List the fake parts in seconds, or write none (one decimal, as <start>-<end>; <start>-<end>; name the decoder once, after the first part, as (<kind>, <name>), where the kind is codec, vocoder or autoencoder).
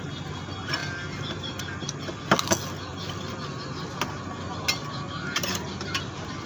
2.9-3.8 (vocoder, BigVGAN v2); 4.8-5.7